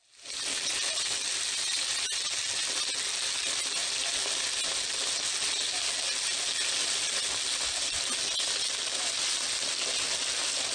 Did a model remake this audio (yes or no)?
no